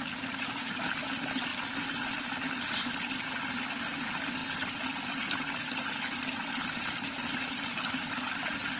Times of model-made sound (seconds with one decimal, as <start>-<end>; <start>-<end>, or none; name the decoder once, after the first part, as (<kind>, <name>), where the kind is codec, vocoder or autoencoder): 4.4-5.0 (vocoder, BigVGAN v2); 7.3-8.1